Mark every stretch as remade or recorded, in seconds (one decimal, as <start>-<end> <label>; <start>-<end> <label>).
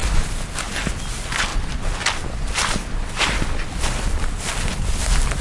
0.0-5.4 recorded